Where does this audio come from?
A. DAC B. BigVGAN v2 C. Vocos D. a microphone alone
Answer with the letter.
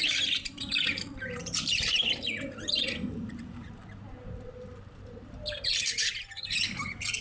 B